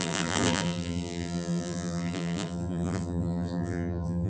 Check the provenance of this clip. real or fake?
fake